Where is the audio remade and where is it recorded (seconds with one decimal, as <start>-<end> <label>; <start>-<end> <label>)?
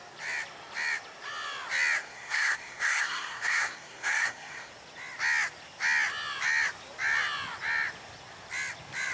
0.0-2.0 recorded; 2.0-4.7 remade; 4.7-9.1 recorded